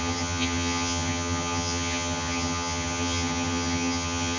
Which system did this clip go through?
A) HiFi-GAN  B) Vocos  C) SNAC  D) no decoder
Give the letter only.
A